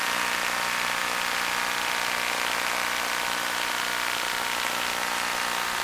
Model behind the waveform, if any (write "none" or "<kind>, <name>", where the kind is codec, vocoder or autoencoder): none